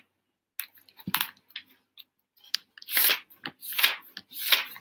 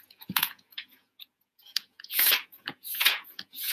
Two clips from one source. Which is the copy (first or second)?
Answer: second